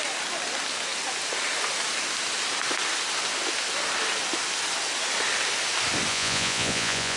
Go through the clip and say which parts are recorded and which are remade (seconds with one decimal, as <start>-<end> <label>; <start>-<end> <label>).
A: 0.0-6.1 recorded; 6.1-7.2 remade